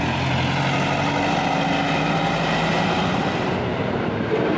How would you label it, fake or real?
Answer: real